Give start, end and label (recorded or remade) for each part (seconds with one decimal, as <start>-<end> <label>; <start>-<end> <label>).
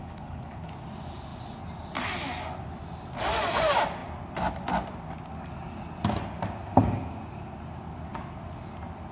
0.0-0.7 remade; 0.7-9.1 recorded